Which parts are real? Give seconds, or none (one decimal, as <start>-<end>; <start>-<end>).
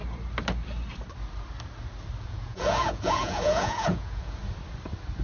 0.0-2.2; 4.4-5.2